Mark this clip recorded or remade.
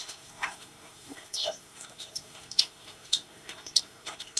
remade